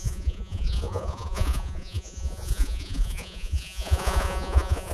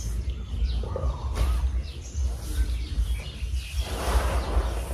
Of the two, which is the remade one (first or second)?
first